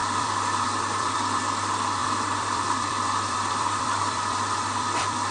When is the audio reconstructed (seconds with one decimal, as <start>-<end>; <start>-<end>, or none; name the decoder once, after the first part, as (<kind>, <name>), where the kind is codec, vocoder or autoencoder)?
0.0-1.5 (vocoder, BigVGAN v2); 2.0-5.3